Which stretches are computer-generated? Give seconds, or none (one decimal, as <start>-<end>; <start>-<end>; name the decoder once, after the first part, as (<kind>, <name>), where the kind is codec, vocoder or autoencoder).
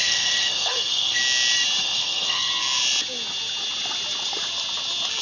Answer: 0.0-1.2 (codec, SNAC); 1.8-2.5